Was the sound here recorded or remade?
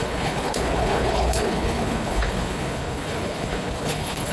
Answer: remade